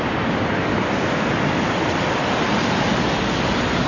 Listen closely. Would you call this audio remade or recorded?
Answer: recorded